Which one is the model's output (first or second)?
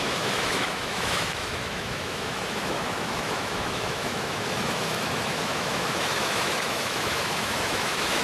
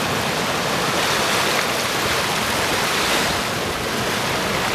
first